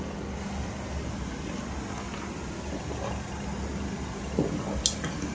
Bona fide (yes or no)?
yes